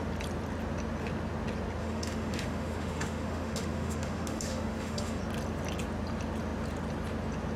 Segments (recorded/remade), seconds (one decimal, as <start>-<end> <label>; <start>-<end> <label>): 0.0-1.8 recorded; 1.8-5.2 remade; 5.2-7.6 recorded